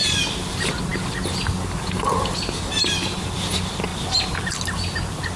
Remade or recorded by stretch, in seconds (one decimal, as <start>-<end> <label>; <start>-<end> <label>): 0.0-5.4 recorded